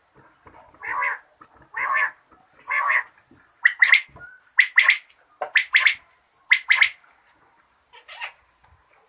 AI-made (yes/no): no